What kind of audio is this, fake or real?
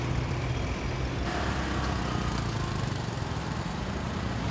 real